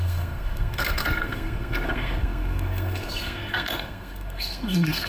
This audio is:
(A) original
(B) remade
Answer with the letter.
B